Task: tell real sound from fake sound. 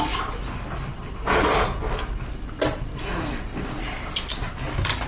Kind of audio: fake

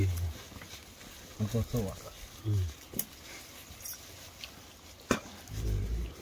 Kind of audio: real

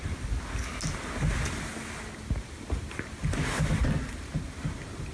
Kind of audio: real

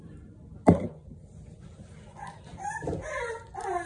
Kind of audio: fake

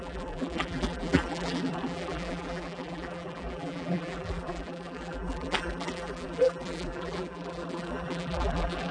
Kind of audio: fake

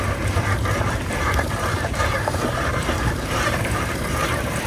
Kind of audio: fake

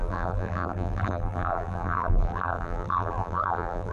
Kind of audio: fake